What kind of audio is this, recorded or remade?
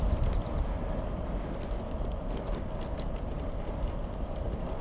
recorded